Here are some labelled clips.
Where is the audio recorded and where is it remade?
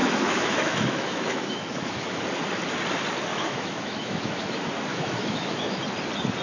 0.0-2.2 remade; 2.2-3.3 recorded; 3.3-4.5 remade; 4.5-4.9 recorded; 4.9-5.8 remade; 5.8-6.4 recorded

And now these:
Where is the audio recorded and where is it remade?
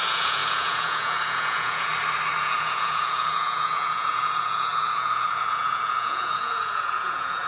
0.0-1.9 remade; 1.9-2.4 recorded; 2.4-7.5 remade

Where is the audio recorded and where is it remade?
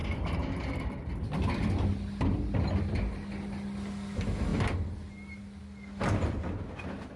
0.0-7.2 recorded